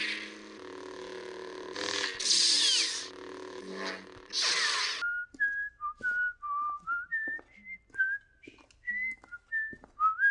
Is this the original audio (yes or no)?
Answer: yes